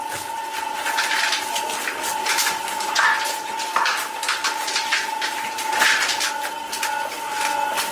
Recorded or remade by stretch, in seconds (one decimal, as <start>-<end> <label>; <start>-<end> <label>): 0.0-7.9 recorded